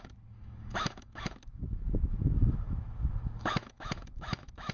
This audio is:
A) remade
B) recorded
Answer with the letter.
A